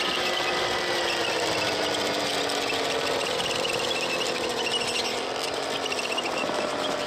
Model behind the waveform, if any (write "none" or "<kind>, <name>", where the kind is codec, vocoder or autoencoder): none